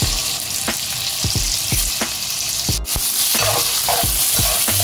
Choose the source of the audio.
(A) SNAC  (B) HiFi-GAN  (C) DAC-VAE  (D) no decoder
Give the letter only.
D